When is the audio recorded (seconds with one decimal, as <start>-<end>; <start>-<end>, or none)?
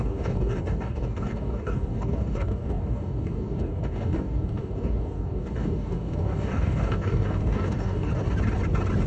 8.1-9.1